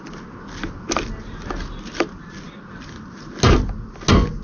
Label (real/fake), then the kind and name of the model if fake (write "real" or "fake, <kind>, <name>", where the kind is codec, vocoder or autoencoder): real